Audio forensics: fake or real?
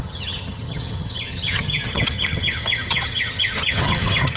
fake